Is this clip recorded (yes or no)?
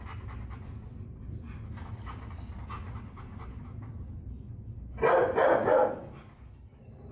yes